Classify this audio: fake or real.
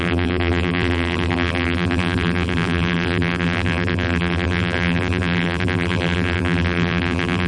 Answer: fake